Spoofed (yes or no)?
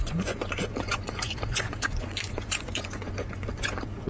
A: yes